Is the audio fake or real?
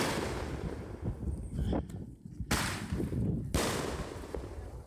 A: real